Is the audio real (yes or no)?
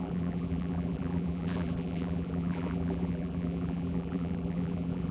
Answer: no